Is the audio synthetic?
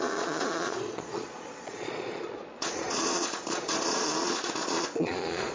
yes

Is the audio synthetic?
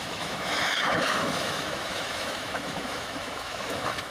yes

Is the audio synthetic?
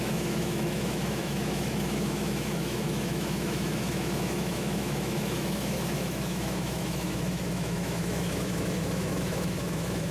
yes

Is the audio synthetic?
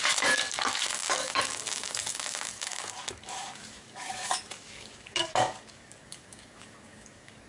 yes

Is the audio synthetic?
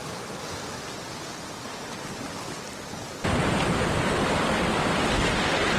no